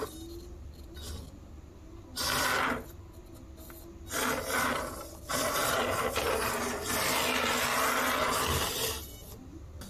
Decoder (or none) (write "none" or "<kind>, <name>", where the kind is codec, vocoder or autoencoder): none